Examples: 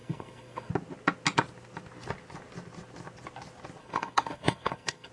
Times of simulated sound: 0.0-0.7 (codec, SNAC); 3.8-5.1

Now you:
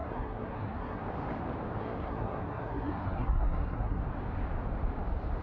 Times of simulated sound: 0.0-1.0 (codec, SNAC); 1.8-4.0

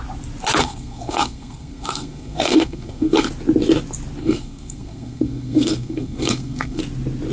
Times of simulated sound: 0.6-3.3 (codec, SNAC); 4.2-6.8

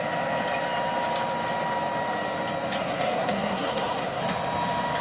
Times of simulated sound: 2.8-4.2 (codec, SNAC)

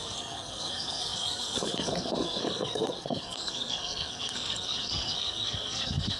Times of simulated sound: 0.0-6.2 (codec, SNAC)

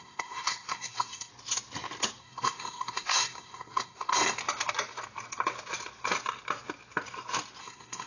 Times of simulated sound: 0.0-1.3 (codec, SNAC); 2.2-4.4; 7.6-8.1

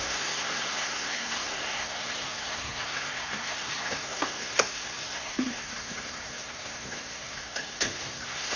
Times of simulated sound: 0.0-8.6 (codec, SNAC)